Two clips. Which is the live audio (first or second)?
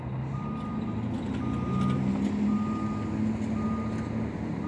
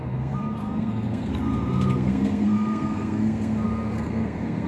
first